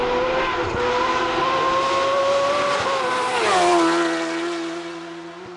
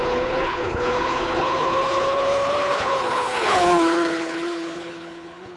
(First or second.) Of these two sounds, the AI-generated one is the second